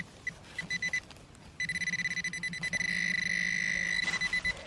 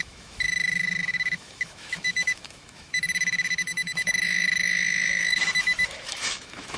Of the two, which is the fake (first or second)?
second